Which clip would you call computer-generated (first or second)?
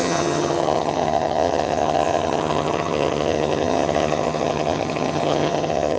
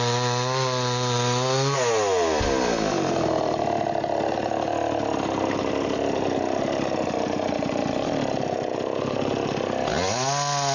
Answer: first